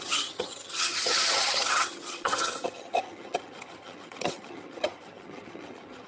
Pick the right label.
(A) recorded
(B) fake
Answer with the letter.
B